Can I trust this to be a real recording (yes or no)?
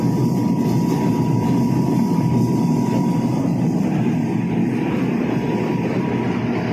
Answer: yes